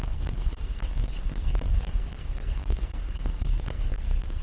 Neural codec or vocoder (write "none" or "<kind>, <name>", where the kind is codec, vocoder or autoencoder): codec, SNAC